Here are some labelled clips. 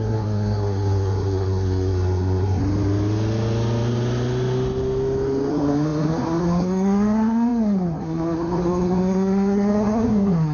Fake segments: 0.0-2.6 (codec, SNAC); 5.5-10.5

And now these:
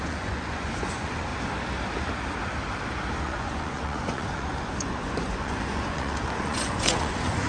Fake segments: 0.0-1.3 (vocoder, Vocos); 3.2-7.5

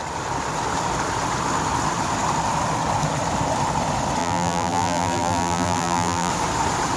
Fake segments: 4.2-6.3 (vocoder, BigVGAN v2)

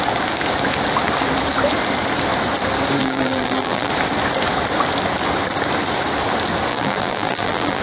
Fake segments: 3.0-3.9 (vocoder, BigVGAN v2); 6.7-7.8